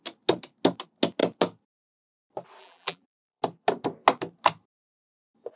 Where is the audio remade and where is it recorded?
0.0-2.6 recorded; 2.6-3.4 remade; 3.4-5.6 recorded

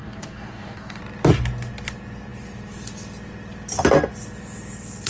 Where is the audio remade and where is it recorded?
0.0-1.0 remade; 1.0-5.1 recorded